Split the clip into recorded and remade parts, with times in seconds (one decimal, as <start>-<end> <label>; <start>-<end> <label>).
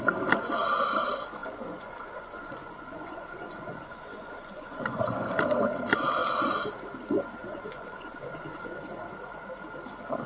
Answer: 0.0-1.4 recorded; 1.4-5.3 remade; 5.3-7.4 recorded; 7.4-8.8 remade; 8.8-10.3 recorded